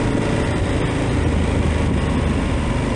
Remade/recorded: recorded